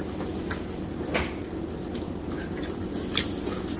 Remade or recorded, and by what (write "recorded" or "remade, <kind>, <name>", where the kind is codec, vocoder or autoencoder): recorded